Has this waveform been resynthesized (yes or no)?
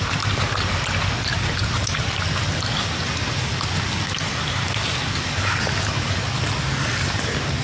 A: no